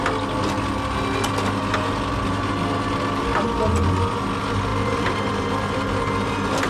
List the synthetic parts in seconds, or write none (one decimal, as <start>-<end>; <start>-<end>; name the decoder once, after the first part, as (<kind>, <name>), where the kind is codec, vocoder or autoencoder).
4.7-5.3 (vocoder, BigVGAN v2)